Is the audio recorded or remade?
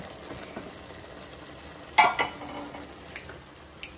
recorded